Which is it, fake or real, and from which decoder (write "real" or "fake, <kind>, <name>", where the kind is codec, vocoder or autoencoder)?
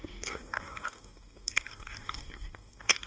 fake, codec, DAC